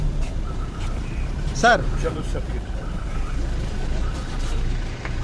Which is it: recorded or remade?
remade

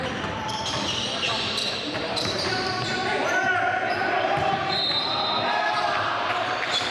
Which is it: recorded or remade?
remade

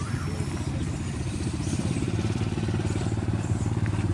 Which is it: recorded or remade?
remade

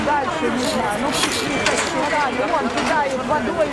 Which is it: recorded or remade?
recorded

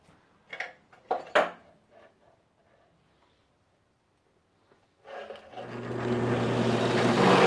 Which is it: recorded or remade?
recorded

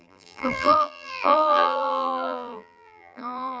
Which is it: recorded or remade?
remade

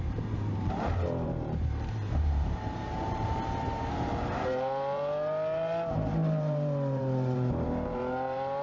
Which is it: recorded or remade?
remade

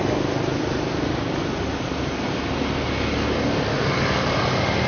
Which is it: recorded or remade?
recorded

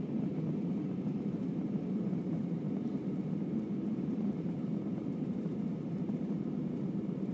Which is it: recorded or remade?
remade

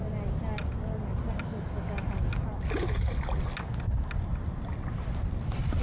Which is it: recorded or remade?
recorded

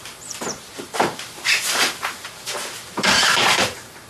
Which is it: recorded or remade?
remade